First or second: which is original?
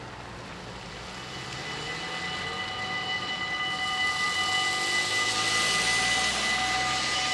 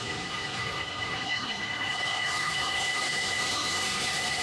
first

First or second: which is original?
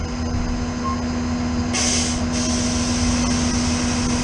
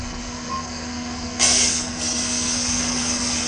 first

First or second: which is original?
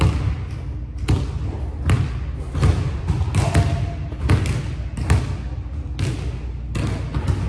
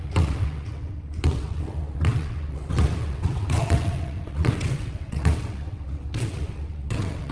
first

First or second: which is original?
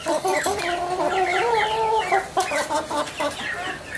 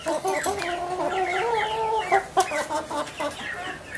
second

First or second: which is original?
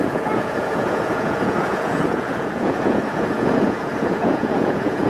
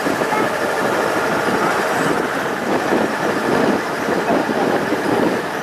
second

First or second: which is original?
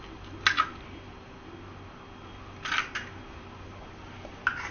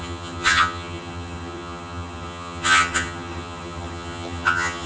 first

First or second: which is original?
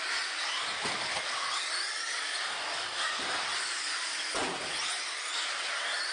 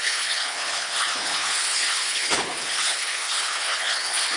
first